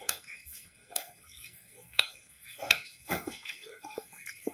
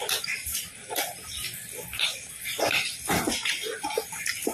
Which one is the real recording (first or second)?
second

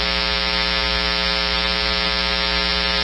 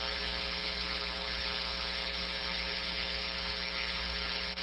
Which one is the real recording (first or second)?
first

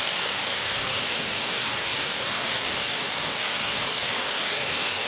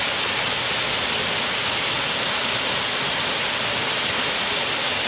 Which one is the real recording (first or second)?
second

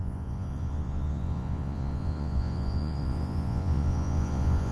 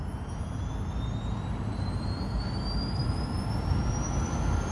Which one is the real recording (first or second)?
second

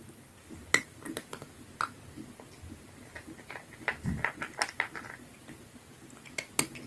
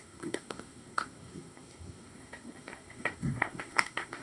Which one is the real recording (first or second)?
first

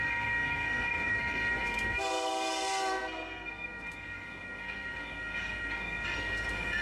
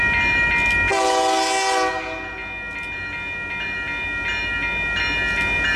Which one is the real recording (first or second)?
second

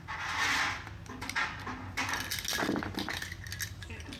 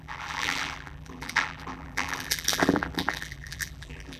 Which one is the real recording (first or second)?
first